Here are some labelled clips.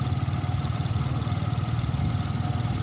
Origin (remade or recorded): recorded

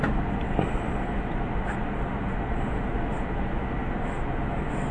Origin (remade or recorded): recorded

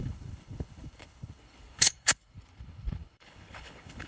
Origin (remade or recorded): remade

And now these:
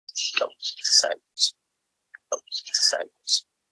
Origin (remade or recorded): recorded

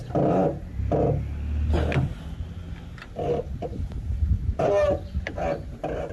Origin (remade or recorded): recorded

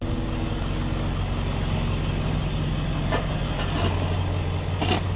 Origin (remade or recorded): recorded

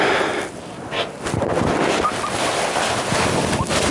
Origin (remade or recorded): recorded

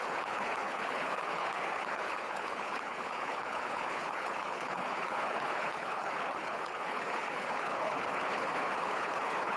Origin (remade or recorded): remade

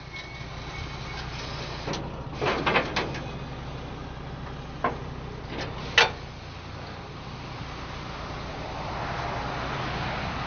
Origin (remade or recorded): recorded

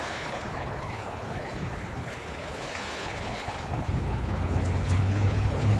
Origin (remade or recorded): remade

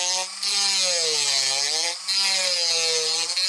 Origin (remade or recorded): recorded